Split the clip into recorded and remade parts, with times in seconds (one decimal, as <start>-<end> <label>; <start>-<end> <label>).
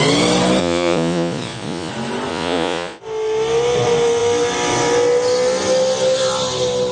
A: 0.0-0.6 recorded; 0.6-1.9 remade; 1.9-2.3 recorded; 2.3-3.0 remade; 3.0-6.9 recorded